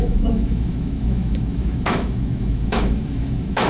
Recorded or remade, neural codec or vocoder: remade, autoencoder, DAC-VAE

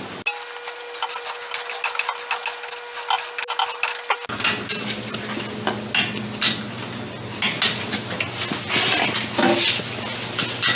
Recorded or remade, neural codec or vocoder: recorded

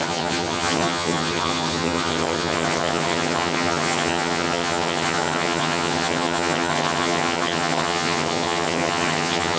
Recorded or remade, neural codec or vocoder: remade, vocoder, HiFi-GAN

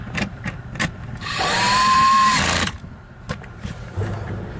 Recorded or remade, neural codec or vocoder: remade, vocoder, BigVGAN v2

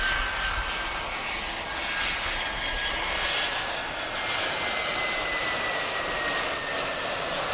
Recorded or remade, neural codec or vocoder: recorded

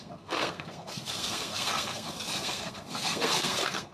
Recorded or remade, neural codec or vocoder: remade, codec, SNAC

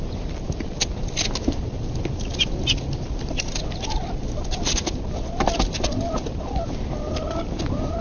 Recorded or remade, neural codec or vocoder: recorded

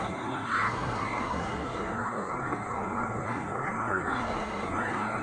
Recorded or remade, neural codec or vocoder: remade, codec, SNAC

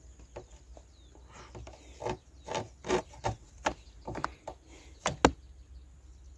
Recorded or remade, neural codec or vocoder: recorded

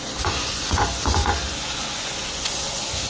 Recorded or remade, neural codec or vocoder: remade, vocoder, Vocos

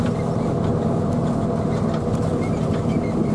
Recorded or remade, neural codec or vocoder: recorded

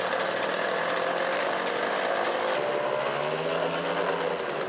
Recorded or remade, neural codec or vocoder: recorded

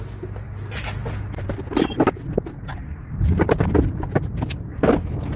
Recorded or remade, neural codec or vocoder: recorded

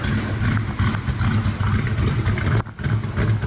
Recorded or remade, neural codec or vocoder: recorded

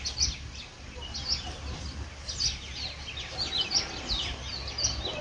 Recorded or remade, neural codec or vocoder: recorded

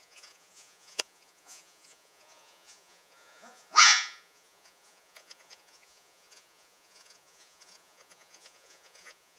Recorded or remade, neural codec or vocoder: remade, vocoder, Vocos